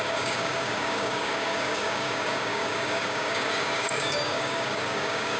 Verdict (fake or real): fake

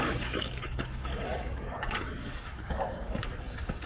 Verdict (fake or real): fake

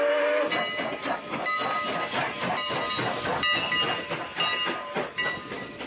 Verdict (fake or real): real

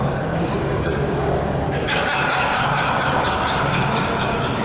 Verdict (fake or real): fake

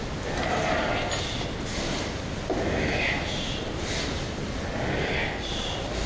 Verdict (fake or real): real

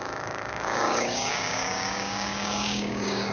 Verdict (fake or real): fake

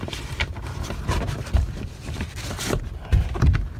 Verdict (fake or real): real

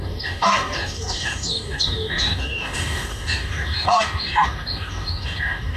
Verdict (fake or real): fake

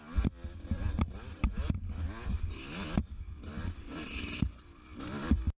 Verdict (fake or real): real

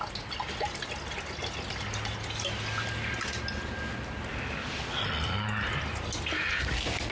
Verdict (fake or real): real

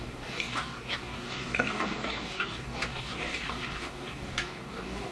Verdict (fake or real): fake